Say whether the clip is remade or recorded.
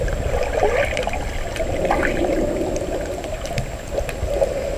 recorded